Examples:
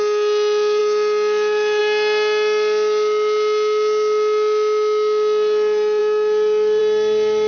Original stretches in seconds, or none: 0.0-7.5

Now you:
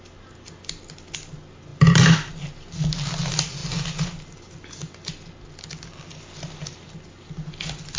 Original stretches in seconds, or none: 0.0-8.0

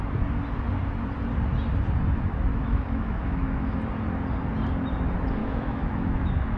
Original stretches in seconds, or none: 0.0-2.5; 3.8-5.4

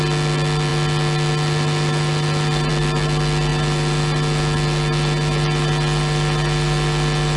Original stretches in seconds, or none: 0.0-7.4

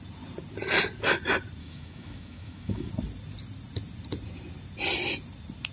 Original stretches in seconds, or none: 0.0-1.6; 2.9-5.7

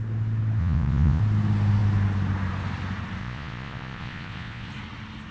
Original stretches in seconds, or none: 0.0-0.6; 1.2-3.2; 4.7-5.3

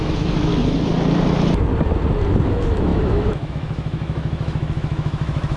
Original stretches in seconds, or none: 0.5-2.5